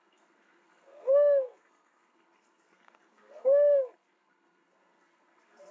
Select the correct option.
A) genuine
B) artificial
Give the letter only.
B